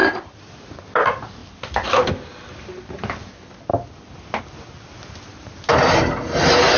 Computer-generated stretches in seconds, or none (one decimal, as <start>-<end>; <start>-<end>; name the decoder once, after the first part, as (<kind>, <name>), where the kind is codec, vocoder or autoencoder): 0.0-0.5 (vocoder, BigVGAN v2); 1.4-2.1